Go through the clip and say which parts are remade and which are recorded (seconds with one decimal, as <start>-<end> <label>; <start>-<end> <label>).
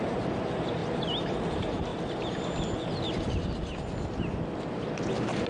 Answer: 0.0-1.9 remade; 1.9-5.5 recorded